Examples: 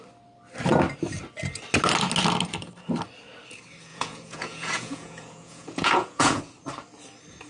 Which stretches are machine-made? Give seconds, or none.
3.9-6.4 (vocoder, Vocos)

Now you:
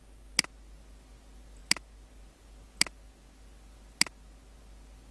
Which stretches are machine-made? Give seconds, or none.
none

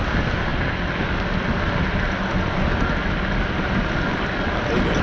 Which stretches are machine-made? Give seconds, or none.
none